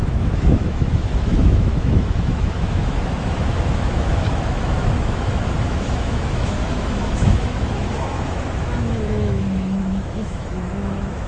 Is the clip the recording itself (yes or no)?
no